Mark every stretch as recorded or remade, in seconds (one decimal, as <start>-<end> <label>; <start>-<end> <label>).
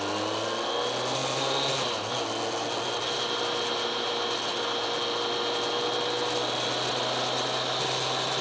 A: 0.0-8.4 recorded